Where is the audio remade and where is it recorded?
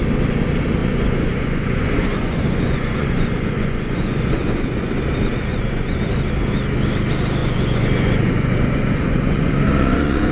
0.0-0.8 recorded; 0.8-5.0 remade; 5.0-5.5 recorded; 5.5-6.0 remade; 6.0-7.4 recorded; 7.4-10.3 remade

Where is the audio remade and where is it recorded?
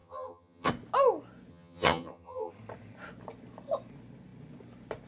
0.0-0.7 remade; 0.7-1.5 recorded; 1.5-2.5 remade; 2.5-5.1 recorded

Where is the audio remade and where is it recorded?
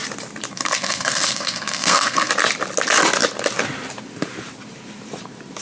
0.0-0.5 recorded; 0.5-2.3 remade; 2.3-5.6 recorded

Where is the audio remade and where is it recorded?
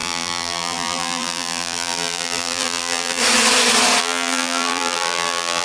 0.0-3.2 remade; 3.2-4.0 recorded; 4.0-5.6 remade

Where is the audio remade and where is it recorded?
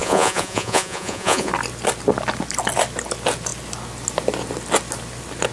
0.0-1.5 remade; 1.5-5.5 recorded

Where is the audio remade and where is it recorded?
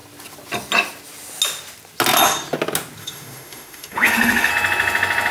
0.0-3.0 recorded; 3.0-4.5 remade; 4.5-5.3 recorded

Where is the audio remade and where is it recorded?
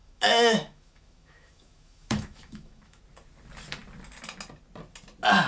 0.0-3.0 remade; 3.0-5.5 recorded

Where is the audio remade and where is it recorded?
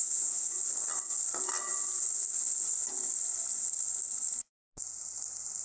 0.0-0.6 remade; 0.6-5.6 recorded